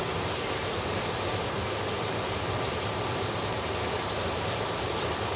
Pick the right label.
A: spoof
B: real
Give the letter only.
A